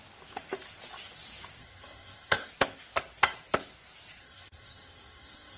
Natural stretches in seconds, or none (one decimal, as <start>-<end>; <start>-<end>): 0.0-1.6; 2.5-4.2

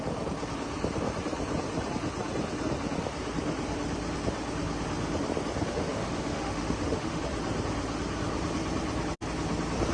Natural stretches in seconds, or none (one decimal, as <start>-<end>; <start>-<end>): 0.0-5.7; 7.2-9.9

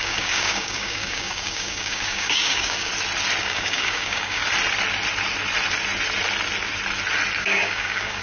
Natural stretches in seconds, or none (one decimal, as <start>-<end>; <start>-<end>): 2.9-3.4; 4.4-7.4

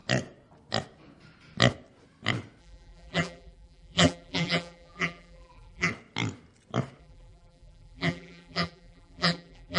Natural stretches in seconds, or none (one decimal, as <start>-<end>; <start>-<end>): 0.0-2.6; 5.9-7.0

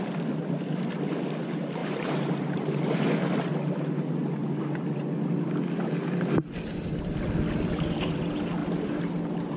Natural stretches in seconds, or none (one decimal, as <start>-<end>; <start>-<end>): 0.0-1.8; 2.8-8.6; 9.2-9.6